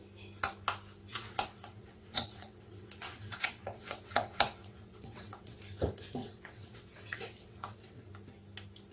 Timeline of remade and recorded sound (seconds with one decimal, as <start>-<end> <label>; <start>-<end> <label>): 0.0-1.1 recorded; 1.1-5.6 remade; 5.6-6.2 recorded; 6.2-8.1 remade; 8.1-8.9 recorded